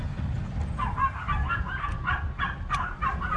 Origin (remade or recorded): recorded